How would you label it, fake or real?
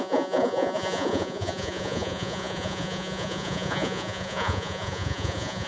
fake